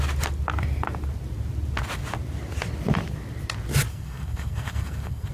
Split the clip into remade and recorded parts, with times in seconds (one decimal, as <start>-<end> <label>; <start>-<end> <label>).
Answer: 0.0-3.9 recorded; 3.9-5.3 remade